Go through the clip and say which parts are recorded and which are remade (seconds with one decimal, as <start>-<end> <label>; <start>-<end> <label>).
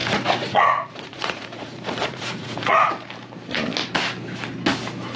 0.0-2.9 remade; 2.9-5.2 recorded